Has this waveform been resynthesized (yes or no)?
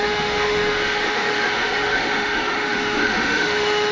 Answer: yes